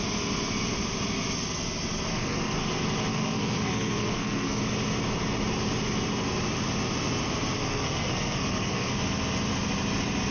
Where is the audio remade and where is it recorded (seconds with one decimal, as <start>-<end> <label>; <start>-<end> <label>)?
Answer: 0.0-2.1 recorded; 2.1-2.7 remade; 2.7-3.1 recorded; 3.1-4.6 remade; 4.6-7.6 recorded; 7.6-8.9 remade; 8.9-10.3 recorded